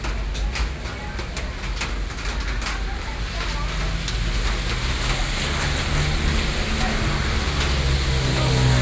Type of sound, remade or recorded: recorded